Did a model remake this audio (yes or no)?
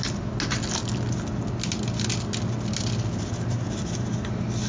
no